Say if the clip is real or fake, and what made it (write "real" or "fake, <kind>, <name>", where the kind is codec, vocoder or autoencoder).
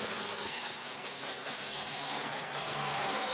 fake, codec, SNAC